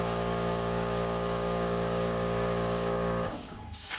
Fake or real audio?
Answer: fake